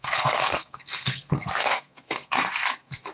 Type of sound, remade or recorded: remade